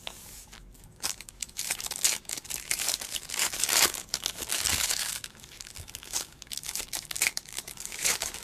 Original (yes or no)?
no